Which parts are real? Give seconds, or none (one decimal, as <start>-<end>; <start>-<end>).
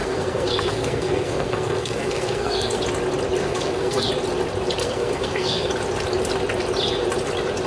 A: 2.8-3.4; 4.1-4.8; 5.7-7.7